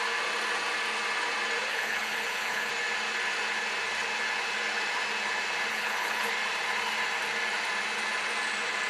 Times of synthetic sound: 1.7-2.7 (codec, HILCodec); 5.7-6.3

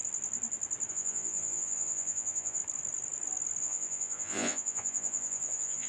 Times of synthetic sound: 0.9-2.6 (vocoder, Vocos); 3.6-5.9

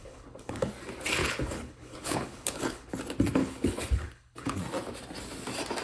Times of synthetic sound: 0.0-0.7 (codec, HILCodec); 1.2-3.0; 3.4-4.6

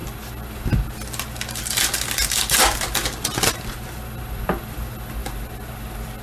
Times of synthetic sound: none

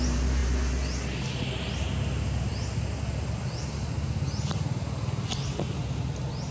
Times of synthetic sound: none

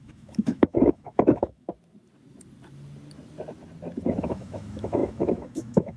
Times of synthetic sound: 0.0-1.7 (autoencoder, DAC-VAE); 4.2-6.0

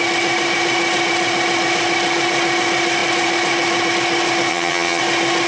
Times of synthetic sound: 4.5-5.0 (vocoder, HiFi-GAN)

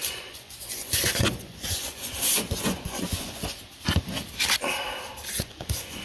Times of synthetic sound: 0.0-3.6 (vocoder, Vocos); 5.2-6.0